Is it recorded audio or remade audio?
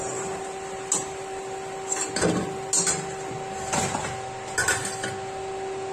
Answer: recorded